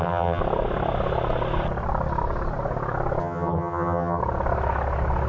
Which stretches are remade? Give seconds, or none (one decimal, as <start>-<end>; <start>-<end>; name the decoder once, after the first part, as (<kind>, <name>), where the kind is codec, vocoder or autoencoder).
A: 0.0-0.4 (vocoder, HiFi-GAN); 3.2-4.2